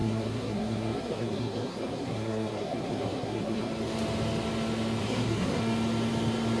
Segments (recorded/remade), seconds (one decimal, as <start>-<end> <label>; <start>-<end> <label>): 0.0-3.7 remade; 3.7-5.0 recorded; 5.0-5.6 remade; 5.6-6.6 recorded